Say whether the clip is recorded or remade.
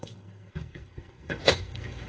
remade